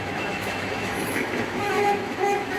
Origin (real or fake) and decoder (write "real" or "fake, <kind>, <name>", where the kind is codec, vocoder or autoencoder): fake, autoencoder, DAC-VAE